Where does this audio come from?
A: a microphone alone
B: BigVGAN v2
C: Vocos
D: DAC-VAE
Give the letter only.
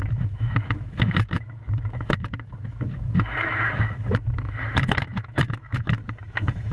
D